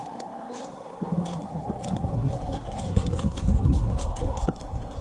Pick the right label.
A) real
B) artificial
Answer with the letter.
B